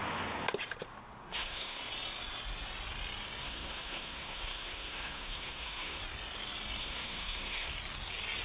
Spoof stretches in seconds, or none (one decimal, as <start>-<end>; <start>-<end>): 1.2-1.8; 3.4-6.0; 6.8-7.7